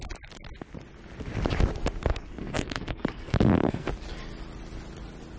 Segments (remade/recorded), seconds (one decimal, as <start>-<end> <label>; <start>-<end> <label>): 0.0-2.1 recorded; 2.1-3.9 remade; 3.9-5.4 recorded